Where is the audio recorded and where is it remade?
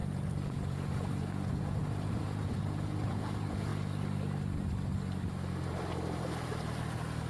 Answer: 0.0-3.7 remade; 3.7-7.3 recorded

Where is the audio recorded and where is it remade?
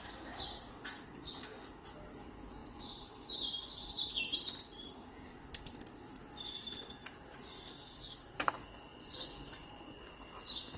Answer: 0.0-2.6 recorded; 2.6-4.1 remade; 4.1-8.9 recorded; 8.9-10.2 remade; 10.2-10.8 recorded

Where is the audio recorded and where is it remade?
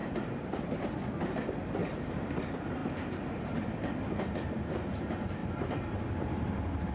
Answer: 0.0-0.8 remade; 0.8-1.8 recorded; 1.8-2.4 remade; 2.4-6.9 recorded